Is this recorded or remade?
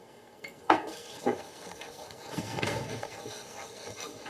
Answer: remade